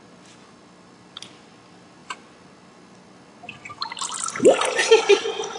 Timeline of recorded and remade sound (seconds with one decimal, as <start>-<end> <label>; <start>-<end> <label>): 0.0-5.6 recorded